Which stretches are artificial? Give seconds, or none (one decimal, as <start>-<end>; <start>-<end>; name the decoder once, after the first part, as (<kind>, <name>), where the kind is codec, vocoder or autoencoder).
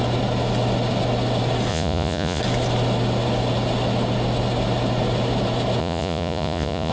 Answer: 1.7-2.4 (vocoder, Vocos); 5.8-6.9